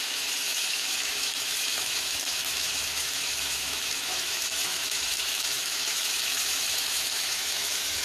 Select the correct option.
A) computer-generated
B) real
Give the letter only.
A